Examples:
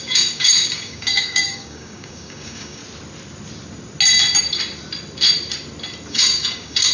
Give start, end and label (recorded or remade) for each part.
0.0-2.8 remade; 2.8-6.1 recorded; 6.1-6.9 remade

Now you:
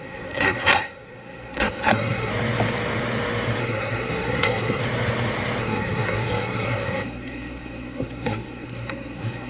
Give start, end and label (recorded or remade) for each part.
0.0-2.3 remade; 2.3-3.6 recorded; 3.6-4.8 remade; 4.8-5.6 recorded; 5.6-9.5 remade